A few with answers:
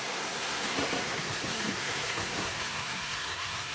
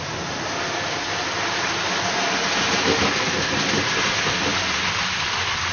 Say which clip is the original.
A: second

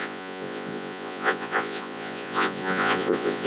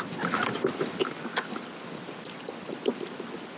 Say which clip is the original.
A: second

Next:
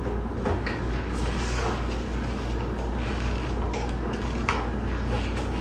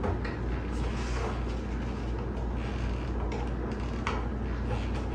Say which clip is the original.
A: second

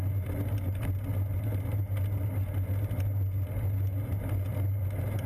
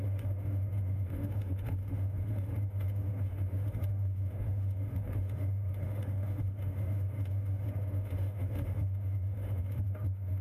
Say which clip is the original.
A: first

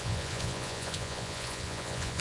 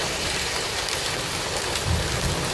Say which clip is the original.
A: second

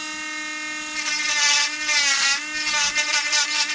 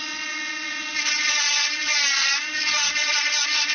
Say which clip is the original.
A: first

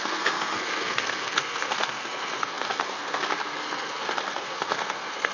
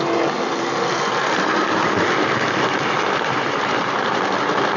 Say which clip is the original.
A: second